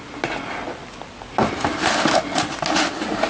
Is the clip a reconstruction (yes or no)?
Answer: no